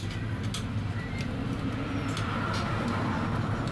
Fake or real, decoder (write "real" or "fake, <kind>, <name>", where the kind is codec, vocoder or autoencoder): real